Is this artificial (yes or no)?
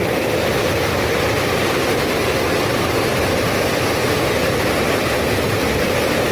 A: no